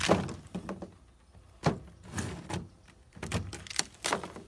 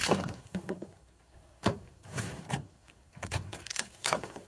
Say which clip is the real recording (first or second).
first